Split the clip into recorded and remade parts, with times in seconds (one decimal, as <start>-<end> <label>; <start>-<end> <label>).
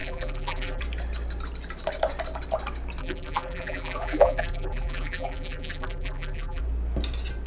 0.0-0.8 remade; 0.8-3.0 recorded; 3.0-6.6 remade; 6.6-7.5 recorded